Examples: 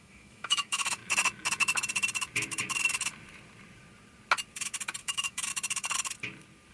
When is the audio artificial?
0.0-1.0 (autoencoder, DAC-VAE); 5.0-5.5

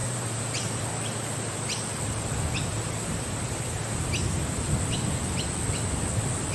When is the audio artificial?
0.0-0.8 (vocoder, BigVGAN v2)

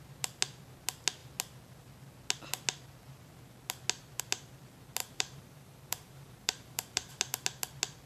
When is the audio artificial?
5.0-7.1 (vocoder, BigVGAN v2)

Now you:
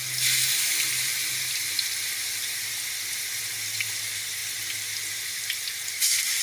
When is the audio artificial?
none

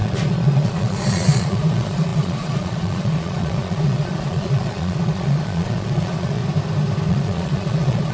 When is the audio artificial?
0.0-6.4 (vocoder, Vocos); 7.1-8.1